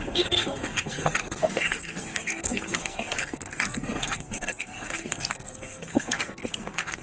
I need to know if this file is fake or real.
fake